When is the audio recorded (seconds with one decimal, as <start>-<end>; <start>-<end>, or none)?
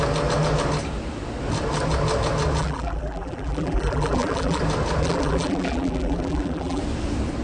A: 0.0-2.6; 4.6-5.0; 6.8-7.4